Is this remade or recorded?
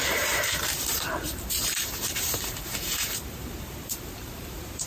remade